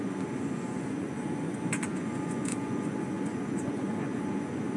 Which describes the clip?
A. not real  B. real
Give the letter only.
A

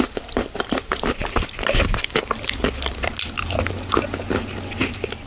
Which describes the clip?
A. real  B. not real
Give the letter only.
A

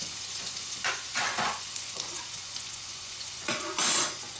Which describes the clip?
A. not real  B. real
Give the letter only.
A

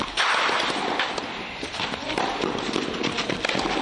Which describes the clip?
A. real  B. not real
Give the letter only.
A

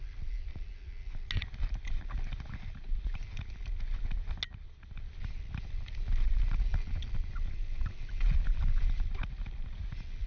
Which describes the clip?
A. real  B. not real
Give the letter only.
A